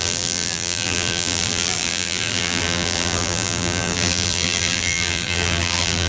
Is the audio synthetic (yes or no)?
yes